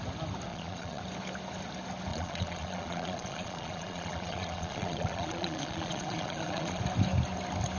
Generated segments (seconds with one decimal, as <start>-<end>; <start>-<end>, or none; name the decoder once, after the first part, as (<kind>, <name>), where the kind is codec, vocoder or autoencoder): 0.5-1.0 (vocoder, Vocos); 2.1-6.8